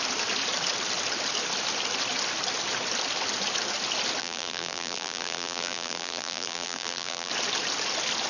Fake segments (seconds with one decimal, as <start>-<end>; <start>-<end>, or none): 4.2-7.3